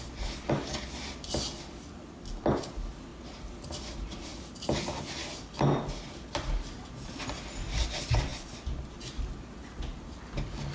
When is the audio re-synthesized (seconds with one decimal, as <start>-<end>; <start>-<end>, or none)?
none